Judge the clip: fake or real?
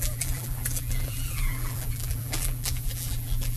fake